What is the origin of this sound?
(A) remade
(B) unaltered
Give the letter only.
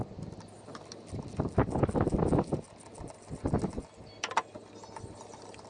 B